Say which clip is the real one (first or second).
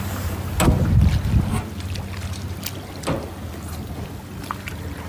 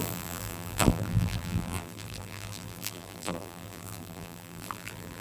first